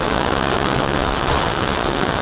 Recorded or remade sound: remade